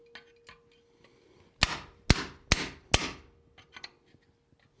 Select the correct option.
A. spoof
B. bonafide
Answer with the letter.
B